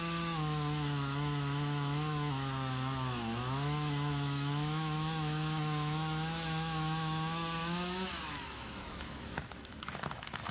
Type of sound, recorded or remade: remade